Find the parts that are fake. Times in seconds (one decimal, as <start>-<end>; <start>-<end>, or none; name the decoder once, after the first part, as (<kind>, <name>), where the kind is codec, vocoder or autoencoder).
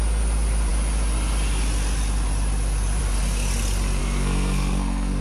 4.0-5.2 (codec, SNAC)